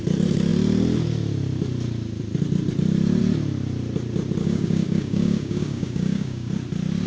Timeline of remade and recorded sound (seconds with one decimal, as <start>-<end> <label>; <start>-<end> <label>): 0.0-4.4 recorded; 4.4-6.5 remade; 6.5-7.1 recorded